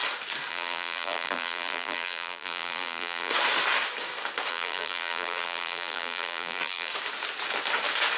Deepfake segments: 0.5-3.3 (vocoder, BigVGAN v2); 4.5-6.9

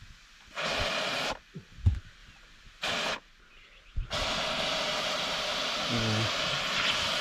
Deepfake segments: none

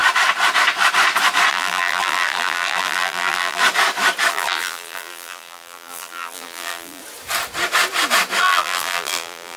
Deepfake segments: 1.5-3.6 (vocoder, BigVGAN v2); 4.3-7.0; 8.4-9.6

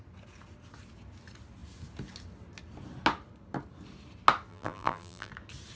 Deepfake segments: 4.5-5.3 (vocoder, BigVGAN v2)